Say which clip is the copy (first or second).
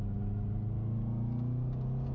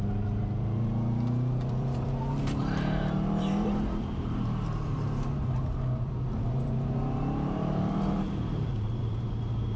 second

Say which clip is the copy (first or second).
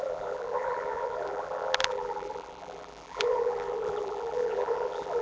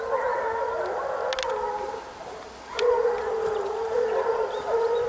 first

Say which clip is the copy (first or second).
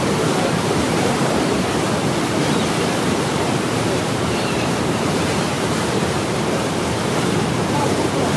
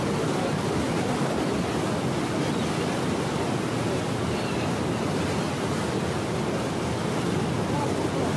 first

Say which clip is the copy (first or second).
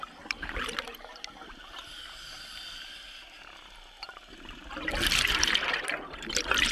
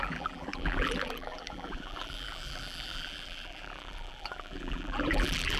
second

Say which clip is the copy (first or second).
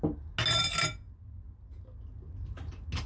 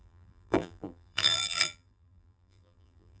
second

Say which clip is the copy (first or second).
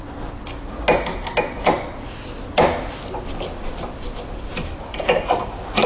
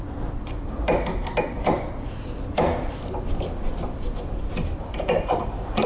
second